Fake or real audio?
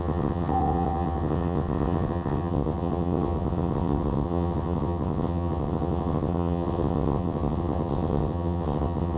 fake